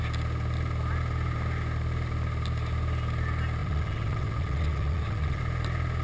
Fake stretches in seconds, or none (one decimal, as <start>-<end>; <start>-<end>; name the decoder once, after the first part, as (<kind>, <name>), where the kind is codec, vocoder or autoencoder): 3.6-5.4 (vocoder, WaveNeXt)